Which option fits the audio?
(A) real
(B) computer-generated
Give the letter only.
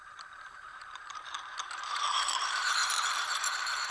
B